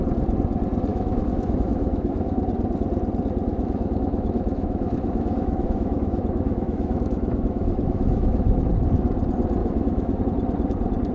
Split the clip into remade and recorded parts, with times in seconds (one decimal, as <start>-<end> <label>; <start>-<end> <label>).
0.0-0.9 recorded; 0.9-2.4 remade; 2.4-3.5 recorded; 3.5-8.7 remade; 8.7-9.6 recorded; 9.6-10.2 remade; 10.2-11.1 recorded